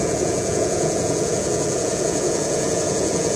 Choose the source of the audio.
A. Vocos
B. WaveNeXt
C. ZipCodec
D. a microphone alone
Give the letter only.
A